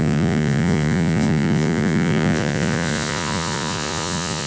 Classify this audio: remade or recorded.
remade